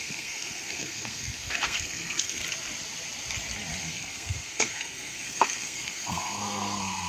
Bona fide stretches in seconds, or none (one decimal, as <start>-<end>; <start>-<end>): 2.4-3.8